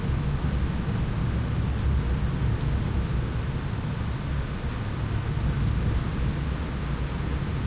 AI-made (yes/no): no